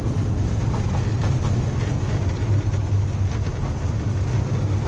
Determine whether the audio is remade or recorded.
recorded